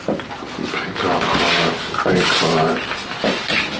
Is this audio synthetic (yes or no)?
no